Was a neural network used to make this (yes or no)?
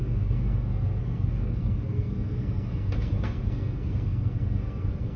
yes